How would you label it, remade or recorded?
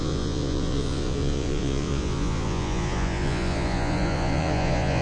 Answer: remade